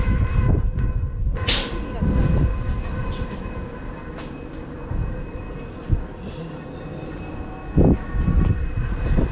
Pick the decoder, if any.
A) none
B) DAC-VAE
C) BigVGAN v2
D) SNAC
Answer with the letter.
A